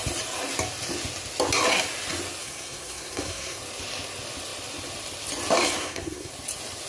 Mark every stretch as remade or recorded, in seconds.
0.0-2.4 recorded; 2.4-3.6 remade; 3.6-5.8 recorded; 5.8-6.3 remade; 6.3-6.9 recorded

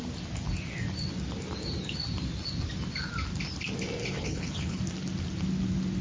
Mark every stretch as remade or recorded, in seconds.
0.0-4.0 recorded; 4.0-4.8 remade; 4.8-6.0 recorded

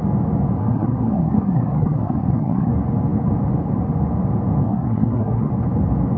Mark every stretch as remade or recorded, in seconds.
0.0-0.6 recorded; 0.6-2.7 remade; 2.7-4.6 recorded; 4.6-5.5 remade; 5.5-6.2 recorded

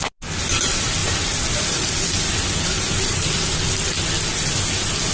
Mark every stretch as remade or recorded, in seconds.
0.0-1.0 recorded; 1.0-3.4 remade; 3.4-5.1 recorded